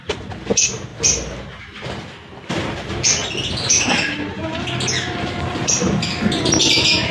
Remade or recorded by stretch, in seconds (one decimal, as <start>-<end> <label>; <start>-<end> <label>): 0.0-7.1 recorded